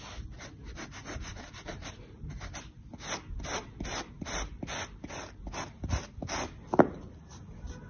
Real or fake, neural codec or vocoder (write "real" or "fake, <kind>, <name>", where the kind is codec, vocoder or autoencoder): real